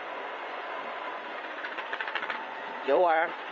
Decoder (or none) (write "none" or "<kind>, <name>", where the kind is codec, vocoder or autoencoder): vocoder, Vocos